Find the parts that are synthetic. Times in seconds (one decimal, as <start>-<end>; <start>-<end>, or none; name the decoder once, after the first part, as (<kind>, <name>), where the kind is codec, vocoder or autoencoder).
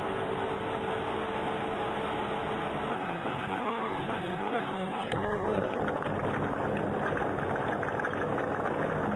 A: 2.9-5.8 (codec, SNAC)